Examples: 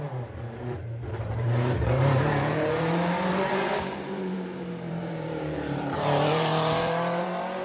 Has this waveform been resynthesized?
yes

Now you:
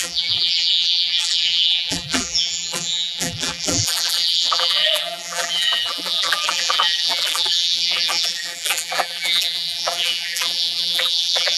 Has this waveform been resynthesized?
yes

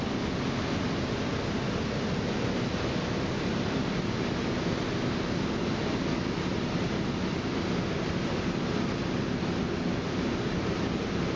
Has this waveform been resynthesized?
no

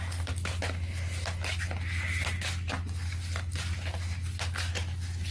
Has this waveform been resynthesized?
no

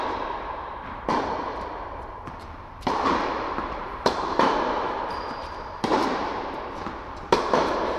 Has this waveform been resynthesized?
yes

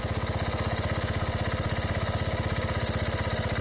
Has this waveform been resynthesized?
no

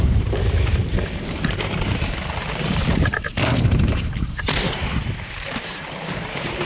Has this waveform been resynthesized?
yes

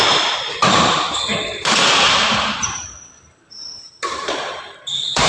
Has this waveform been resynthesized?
yes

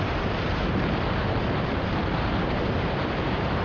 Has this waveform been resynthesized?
yes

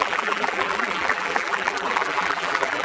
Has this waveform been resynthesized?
yes